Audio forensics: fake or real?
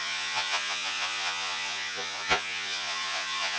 fake